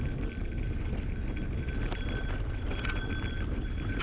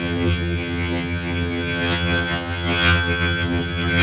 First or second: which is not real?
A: second